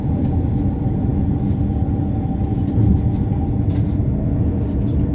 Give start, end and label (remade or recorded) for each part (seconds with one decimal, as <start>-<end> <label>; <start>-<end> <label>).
0.0-5.1 recorded